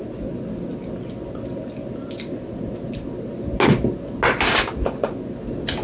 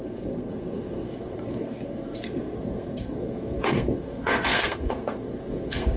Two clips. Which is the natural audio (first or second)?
first